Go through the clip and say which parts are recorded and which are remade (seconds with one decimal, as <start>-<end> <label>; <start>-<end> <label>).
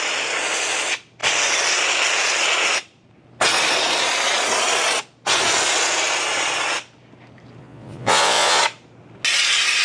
0.0-7.6 recorded; 7.6-8.6 remade; 8.6-9.8 recorded